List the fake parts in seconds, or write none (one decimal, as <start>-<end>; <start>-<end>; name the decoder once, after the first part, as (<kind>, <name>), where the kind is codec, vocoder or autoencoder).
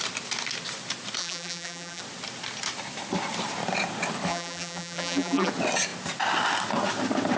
1.2-2.0 (vocoder, BigVGAN v2); 4.3-5.5